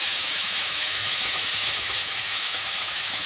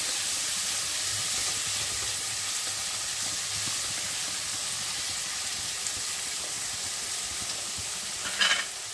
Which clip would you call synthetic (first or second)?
first